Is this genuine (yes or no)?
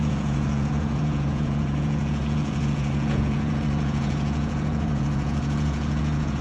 no